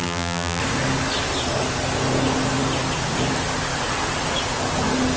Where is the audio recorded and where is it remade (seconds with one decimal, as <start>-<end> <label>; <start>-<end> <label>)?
0.0-0.6 remade; 0.6-5.2 recorded